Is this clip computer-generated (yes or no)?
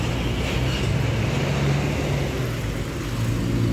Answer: no